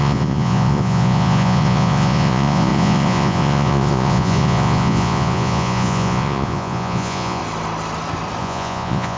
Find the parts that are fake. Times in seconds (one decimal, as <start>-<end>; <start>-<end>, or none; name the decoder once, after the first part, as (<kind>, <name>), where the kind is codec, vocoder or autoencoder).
0.0-7.4 (vocoder, Vocos); 8.4-9.2